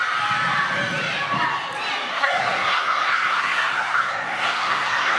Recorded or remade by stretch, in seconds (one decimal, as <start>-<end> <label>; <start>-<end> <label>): 0.0-2.1 recorded; 2.1-5.2 remade